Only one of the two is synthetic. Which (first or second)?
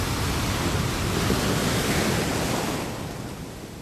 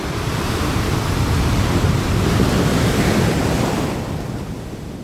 second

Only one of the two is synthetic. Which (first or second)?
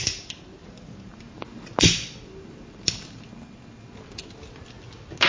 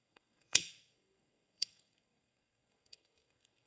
second